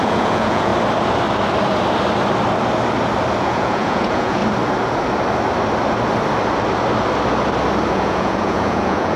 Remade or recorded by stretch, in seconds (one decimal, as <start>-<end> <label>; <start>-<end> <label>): 0.0-0.7 remade; 0.7-3.4 recorded; 3.4-4.4 remade; 4.4-7.9 recorded; 7.9-9.2 remade